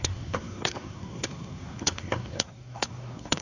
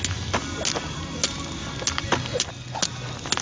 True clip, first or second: second